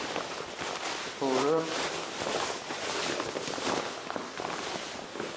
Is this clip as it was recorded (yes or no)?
no